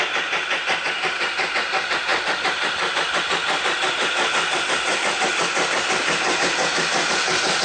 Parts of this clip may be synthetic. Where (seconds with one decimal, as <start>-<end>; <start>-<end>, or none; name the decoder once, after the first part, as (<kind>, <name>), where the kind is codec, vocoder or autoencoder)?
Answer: none